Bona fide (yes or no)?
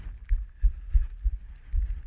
yes